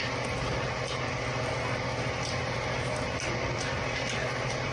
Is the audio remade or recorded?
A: recorded